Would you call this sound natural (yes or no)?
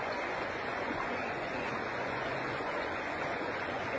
no